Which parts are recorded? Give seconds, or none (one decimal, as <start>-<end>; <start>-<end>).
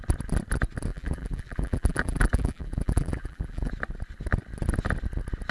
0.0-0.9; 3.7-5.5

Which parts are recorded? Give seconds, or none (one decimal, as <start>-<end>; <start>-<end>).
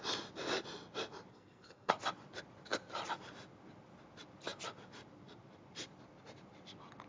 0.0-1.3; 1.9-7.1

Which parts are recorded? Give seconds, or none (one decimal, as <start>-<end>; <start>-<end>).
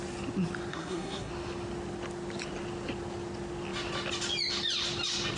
0.0-0.7; 1.3-5.4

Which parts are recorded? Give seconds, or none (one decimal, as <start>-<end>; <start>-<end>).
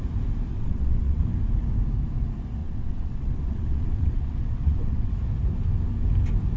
0.0-0.5; 1.2-2.6; 5.1-6.6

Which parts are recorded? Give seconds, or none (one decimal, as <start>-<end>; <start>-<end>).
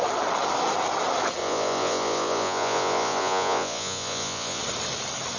0.0-1.4; 4.6-5.4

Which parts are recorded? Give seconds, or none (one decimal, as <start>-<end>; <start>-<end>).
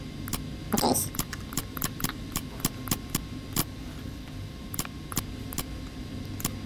0.0-0.9; 2.6-3.6; 5.2-6.7